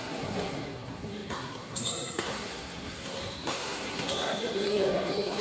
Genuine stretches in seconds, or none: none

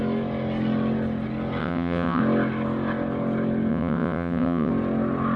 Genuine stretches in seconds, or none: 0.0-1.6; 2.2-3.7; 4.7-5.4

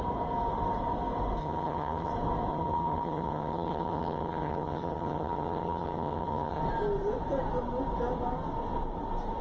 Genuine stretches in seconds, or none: 0.0-1.4; 2.1-2.5; 6.6-9.4